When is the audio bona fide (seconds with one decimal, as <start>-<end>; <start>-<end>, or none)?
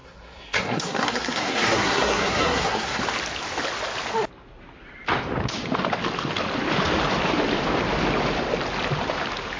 3.0-9.6